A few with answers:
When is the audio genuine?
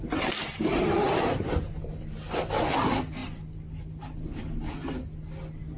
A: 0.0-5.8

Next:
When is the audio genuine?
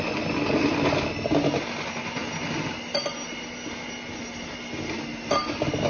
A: 0.0-5.9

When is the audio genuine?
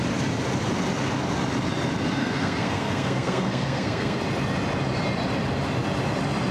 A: 0.0-2.2; 4.2-6.5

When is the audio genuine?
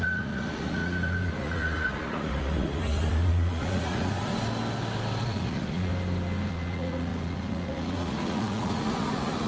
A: 4.3-5.2; 5.9-6.5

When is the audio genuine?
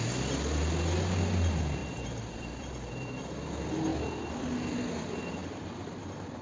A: 0.0-1.8; 3.3-5.4; 6.0-6.4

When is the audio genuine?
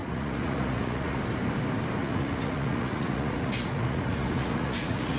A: 1.2-2.0